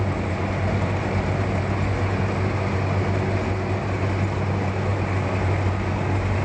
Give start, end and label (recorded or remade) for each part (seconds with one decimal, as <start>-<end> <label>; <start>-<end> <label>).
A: 0.0-6.4 recorded